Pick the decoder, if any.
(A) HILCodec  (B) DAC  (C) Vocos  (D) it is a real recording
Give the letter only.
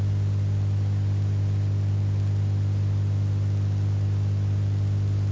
D